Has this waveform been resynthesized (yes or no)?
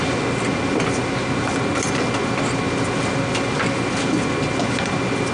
no